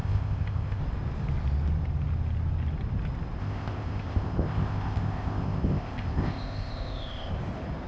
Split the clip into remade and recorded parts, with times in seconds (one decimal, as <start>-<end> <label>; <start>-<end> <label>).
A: 0.0-0.8 remade; 0.8-3.4 recorded; 3.4-7.3 remade; 7.3-7.9 recorded